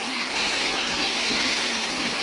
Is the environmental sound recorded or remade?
remade